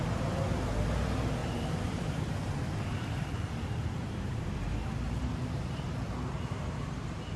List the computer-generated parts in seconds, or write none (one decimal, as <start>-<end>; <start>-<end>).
1.4-5.8